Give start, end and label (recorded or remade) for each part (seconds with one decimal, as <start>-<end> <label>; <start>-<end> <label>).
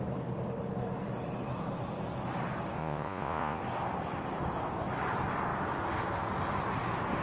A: 0.0-2.8 recorded; 2.8-3.6 remade; 3.6-7.2 recorded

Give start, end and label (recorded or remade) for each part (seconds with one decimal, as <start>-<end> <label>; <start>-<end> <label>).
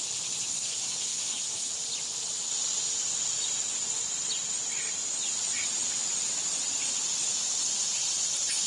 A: 0.0-0.5 recorded; 0.5-1.7 remade; 1.7-8.7 recorded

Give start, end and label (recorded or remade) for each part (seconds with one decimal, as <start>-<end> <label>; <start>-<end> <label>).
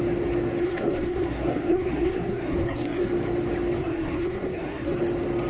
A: 0.0-0.6 recorded; 0.6-3.1 remade; 3.1-3.8 recorded; 3.8-5.0 remade; 5.0-5.5 recorded